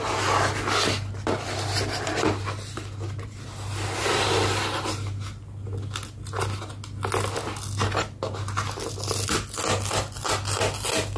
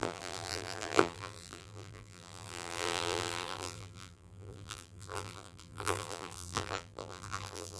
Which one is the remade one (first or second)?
second